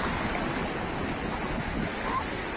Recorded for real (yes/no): yes